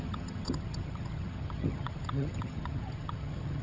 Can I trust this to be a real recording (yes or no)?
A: no